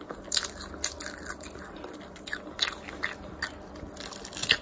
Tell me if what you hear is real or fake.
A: real